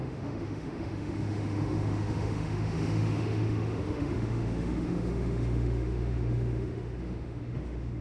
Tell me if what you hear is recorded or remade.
remade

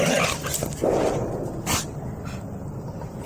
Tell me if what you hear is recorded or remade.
recorded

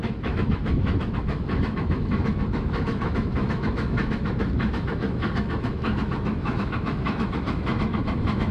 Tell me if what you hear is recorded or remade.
remade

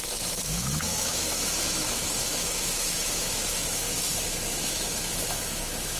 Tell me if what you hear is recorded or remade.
remade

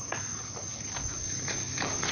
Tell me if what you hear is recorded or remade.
recorded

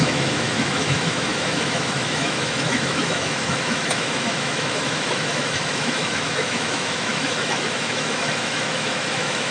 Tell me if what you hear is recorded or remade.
remade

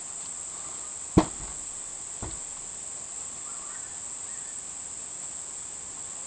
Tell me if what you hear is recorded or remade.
recorded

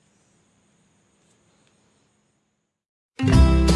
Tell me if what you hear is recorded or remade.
recorded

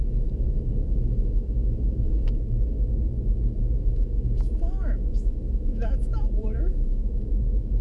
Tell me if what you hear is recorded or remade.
remade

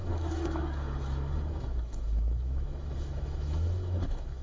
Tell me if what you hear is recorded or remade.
remade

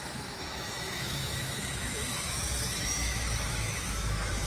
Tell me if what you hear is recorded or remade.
remade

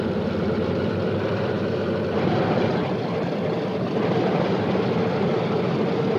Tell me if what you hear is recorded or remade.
recorded